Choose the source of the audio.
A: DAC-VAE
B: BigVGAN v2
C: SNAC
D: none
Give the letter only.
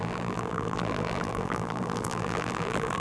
B